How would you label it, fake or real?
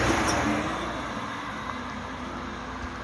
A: real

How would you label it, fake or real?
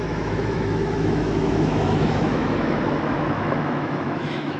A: fake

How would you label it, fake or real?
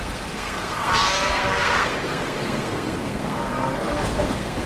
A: fake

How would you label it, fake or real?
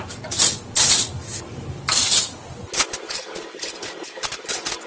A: real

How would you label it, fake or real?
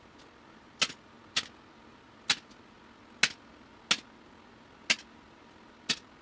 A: real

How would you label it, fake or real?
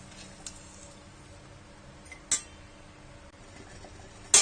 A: real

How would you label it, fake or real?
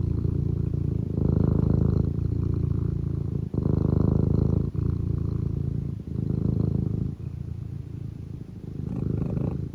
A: real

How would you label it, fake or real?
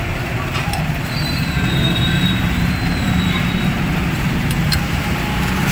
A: fake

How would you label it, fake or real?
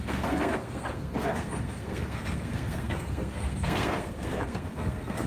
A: fake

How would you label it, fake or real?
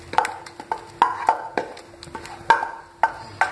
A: real